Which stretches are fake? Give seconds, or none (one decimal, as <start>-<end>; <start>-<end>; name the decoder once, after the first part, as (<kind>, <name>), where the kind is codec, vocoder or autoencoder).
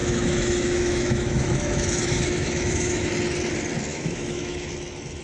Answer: 0.0-3.1 (autoencoder, DAC-VAE); 3.9-4.7